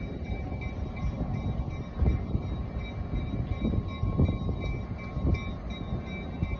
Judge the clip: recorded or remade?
recorded